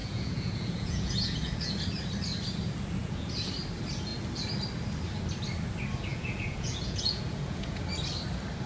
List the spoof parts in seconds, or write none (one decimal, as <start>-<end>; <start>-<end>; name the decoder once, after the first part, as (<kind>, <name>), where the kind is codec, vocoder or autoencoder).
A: 0.0-1.7 (vocoder, Vocos); 3.0-3.5; 6.1-7.8